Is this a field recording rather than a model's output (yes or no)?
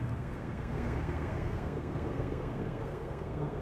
no